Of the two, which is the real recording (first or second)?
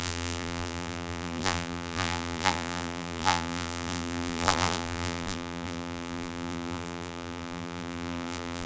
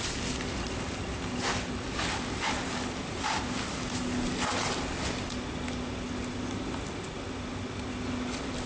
second